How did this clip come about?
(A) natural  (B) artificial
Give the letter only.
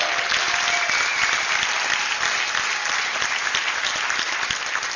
A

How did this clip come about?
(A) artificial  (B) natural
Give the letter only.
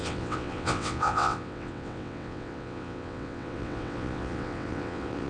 A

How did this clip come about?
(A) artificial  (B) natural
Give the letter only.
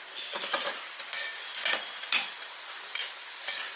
B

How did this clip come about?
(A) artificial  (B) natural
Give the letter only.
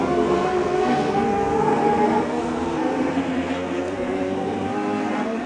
A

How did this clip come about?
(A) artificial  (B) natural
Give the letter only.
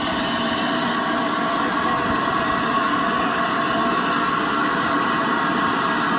B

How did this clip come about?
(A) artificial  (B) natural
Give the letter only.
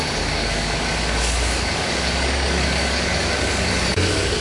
A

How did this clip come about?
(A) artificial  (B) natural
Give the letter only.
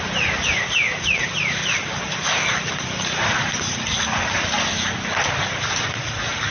B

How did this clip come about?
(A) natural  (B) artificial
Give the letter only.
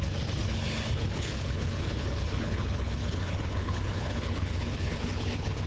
B